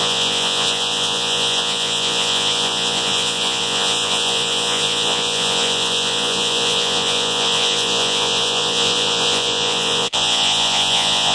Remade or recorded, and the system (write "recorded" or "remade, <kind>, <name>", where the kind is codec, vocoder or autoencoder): remade, vocoder, Vocos